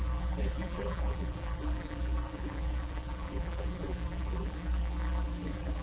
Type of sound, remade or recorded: remade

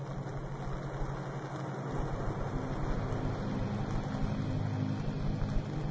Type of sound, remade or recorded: recorded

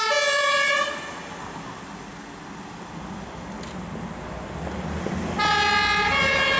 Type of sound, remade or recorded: recorded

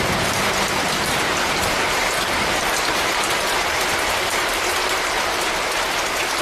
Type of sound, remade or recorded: remade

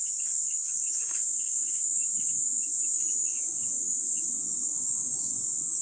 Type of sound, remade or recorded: remade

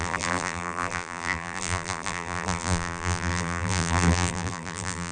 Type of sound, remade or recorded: remade